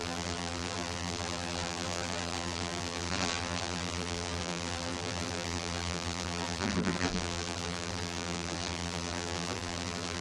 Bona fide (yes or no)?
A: no